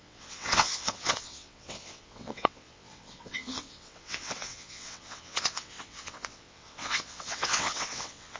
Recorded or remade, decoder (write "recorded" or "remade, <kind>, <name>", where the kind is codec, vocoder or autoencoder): remade, vocoder, WaveNeXt